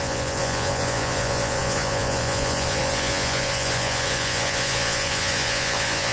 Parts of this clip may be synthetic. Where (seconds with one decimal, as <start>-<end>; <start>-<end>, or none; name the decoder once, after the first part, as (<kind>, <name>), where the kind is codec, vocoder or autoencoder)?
0.0-6.1 (vocoder, Vocos)